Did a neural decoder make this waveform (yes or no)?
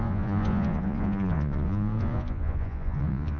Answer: yes